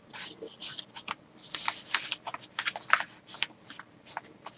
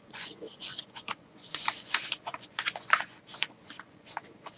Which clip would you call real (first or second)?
first